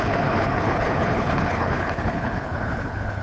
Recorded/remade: remade